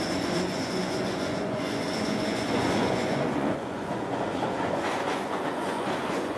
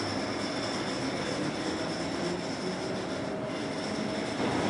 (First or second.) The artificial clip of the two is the first